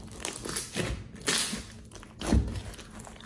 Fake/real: real